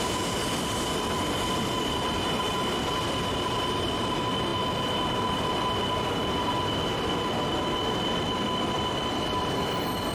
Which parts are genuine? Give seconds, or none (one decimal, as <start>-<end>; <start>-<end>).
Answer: 0.0-10.1